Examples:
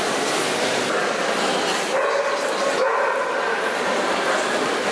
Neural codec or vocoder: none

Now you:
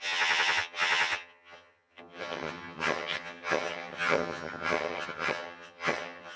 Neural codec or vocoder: vocoder, HiFi-GAN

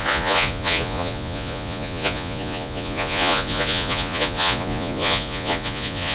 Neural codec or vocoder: vocoder, Vocos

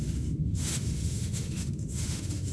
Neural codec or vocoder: autoencoder, DAC-VAE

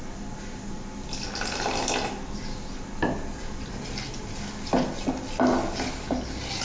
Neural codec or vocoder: none